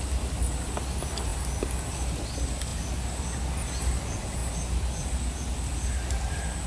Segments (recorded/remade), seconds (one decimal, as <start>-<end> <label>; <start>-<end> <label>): 0.0-6.7 recorded